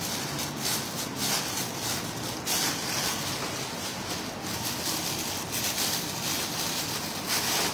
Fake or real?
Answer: real